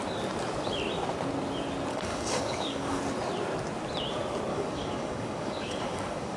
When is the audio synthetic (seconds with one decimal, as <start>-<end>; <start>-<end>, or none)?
1.9-3.0; 4.5-6.4